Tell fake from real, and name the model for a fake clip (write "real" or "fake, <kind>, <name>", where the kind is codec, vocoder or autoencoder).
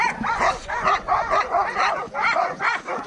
fake, vocoder, Vocos